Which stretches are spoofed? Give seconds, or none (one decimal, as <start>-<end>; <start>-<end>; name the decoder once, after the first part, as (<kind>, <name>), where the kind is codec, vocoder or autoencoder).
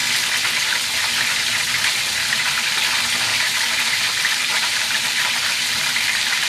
3.3-6.5 (vocoder, BigVGAN v2)